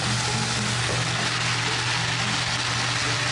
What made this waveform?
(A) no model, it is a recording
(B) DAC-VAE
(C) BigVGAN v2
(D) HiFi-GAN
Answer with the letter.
A